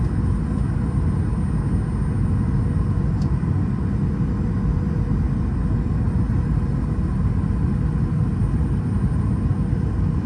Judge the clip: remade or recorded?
recorded